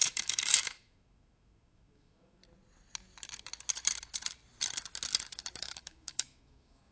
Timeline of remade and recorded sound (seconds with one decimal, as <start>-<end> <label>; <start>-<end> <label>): 0.0-2.4 remade; 2.4-5.6 recorded; 5.6-6.9 remade